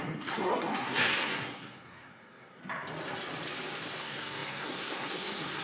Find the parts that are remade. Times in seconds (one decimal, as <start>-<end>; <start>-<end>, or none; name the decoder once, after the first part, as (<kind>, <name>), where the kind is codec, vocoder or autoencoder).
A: 0.0-2.6 (codec, SNAC); 4.0-5.6